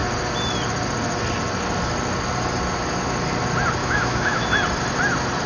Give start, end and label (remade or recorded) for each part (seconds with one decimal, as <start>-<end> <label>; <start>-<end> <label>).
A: 0.0-3.8 recorded; 3.8-4.5 remade; 4.5-5.5 recorded